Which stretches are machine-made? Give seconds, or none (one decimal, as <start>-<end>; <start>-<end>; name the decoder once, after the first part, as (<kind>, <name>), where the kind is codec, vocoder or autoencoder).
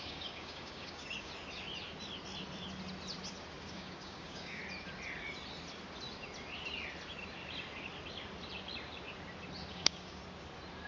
0.0-1.3 (codec, DAC); 3.6-4.6; 9.7-10.2